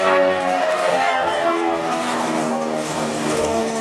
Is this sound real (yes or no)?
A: no